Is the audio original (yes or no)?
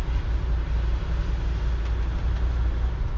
yes